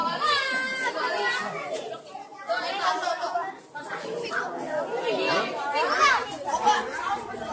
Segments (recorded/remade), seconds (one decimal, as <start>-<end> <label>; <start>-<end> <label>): 0.0-7.5 recorded